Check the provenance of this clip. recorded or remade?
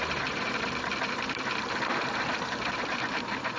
remade